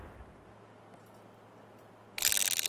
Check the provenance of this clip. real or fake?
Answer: real